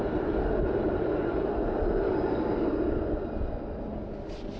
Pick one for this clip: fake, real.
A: real